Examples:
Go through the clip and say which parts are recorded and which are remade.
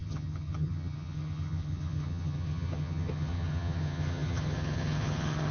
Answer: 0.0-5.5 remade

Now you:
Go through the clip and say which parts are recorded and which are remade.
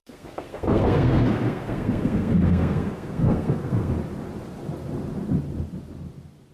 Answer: 0.0-3.9 remade; 3.9-6.5 recorded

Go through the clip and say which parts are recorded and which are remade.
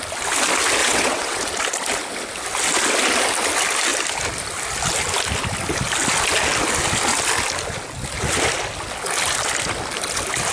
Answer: 0.0-0.8 recorded; 0.8-1.4 remade; 1.4-10.5 recorded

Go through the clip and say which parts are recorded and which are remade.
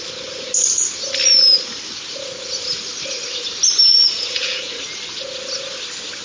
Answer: 0.0-3.9 recorded; 3.9-4.7 remade; 4.7-6.2 recorded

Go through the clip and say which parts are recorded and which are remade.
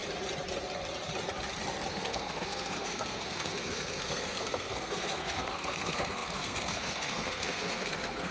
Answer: 0.0-1.9 recorded; 1.9-8.3 remade